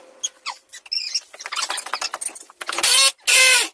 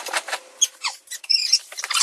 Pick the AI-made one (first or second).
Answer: second